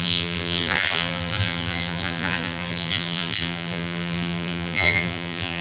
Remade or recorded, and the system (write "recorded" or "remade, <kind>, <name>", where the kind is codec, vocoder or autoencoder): remade, vocoder, BigVGAN v2